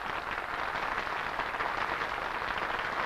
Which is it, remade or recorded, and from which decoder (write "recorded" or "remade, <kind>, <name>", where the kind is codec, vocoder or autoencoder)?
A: recorded